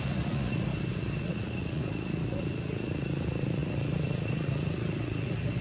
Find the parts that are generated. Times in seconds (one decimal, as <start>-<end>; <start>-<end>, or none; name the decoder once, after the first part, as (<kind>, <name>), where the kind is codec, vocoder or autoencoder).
0.0-0.7 (vocoder, Vocos); 1.2-5.6